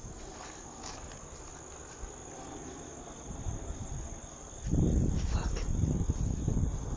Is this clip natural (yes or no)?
yes